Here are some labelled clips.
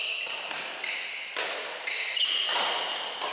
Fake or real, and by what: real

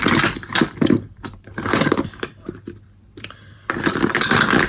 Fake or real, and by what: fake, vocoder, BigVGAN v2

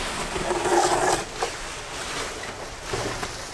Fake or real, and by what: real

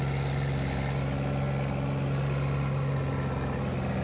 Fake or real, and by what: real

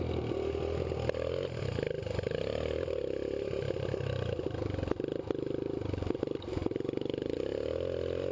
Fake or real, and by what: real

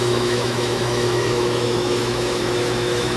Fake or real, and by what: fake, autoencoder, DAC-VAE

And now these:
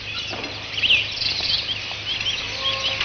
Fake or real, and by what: real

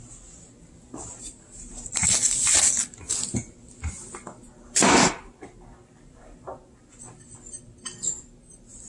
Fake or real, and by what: real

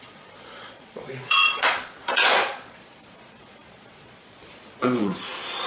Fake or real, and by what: fake, vocoder, Vocos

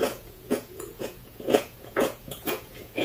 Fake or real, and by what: fake, vocoder, Vocos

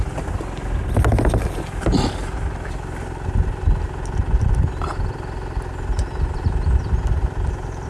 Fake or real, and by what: real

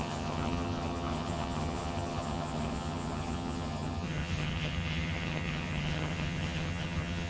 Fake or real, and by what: fake, vocoder, HiFi-GAN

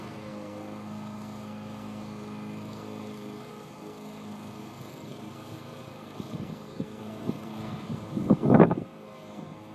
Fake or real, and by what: fake, codec, SNAC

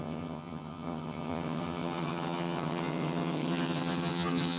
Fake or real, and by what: fake, vocoder, HiFi-GAN